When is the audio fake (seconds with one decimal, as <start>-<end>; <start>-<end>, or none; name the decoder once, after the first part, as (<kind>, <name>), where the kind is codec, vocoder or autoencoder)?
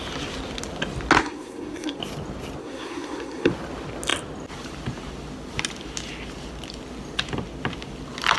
1.2-2.0 (codec, SNAC); 2.6-3.5